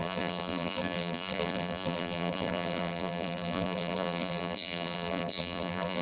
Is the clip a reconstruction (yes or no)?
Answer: yes